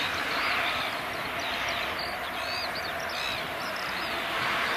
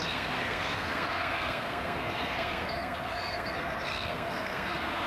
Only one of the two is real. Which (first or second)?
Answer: first